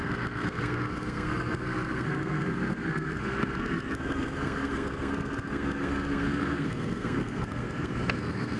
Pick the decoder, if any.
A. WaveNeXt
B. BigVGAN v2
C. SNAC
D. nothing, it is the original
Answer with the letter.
C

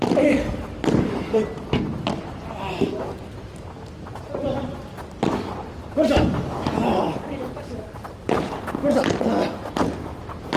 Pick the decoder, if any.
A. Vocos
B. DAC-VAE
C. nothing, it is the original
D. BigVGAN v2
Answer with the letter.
D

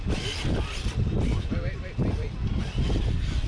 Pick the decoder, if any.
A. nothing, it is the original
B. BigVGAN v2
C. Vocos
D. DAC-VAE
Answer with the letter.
B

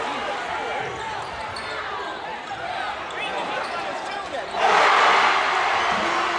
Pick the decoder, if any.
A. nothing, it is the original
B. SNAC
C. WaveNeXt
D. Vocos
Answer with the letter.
A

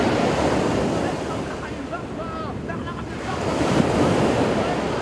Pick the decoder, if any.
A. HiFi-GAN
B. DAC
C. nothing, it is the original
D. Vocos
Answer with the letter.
C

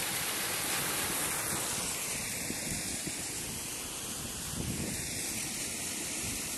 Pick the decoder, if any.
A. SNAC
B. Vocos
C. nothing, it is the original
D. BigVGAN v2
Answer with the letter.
C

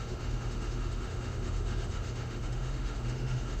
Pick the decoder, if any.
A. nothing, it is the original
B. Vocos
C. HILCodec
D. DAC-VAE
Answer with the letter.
D